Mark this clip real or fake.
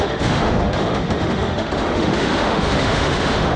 fake